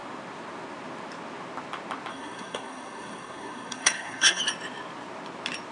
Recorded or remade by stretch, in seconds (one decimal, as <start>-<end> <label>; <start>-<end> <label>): 0.0-2.1 recorded; 2.1-4.4 remade; 4.4-5.7 recorded